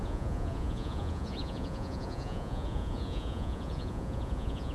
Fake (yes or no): yes